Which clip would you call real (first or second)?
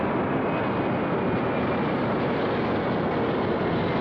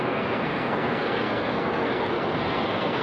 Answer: first